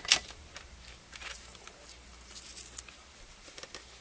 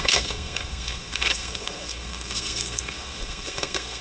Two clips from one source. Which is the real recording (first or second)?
first